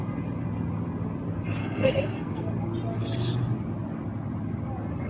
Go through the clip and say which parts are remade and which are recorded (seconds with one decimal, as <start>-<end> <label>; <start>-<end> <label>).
0.0-1.6 recorded; 1.6-2.5 remade; 2.5-5.1 recorded